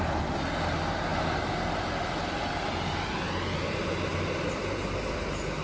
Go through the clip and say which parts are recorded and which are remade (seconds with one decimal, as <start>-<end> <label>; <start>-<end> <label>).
0.0-5.6 recorded